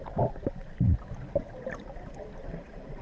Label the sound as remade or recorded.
recorded